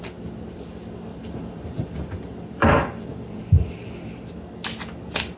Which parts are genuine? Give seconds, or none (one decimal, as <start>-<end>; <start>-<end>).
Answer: 0.0-1.1; 4.3-5.4